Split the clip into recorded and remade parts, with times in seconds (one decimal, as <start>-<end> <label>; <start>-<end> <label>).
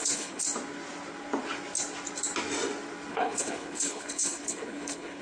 0.0-0.4 remade; 0.4-3.1 recorded; 3.1-5.2 remade